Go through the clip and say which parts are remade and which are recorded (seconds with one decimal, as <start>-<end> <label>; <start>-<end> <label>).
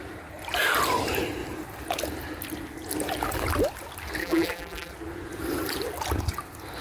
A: 0.0-4.2 recorded; 4.2-4.9 remade; 4.9-6.8 recorded